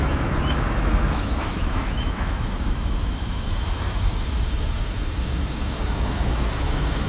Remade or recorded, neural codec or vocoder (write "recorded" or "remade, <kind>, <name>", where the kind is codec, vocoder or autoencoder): remade, autoencoder, DAC-VAE